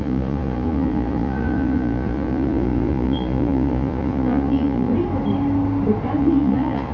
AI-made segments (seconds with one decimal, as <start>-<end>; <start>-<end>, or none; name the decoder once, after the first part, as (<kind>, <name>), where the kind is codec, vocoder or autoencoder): 0.0-4.9 (vocoder, Vocos); 6.2-6.9